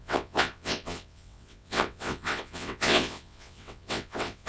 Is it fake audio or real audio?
fake